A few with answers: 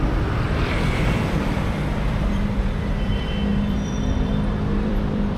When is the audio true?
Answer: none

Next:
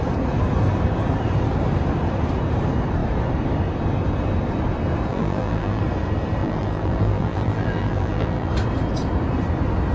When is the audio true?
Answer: 0.0-5.1; 5.8-6.4; 8.5-9.9

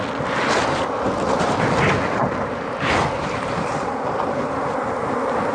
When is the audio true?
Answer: 0.0-2.2; 4.9-5.5

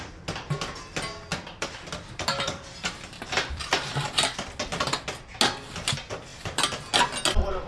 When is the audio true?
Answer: 0.0-1.3; 3.9-6.3; 6.9-7.7

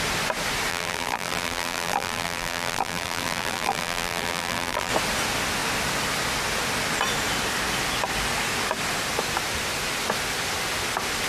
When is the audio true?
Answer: 0.0-0.7; 4.9-11.3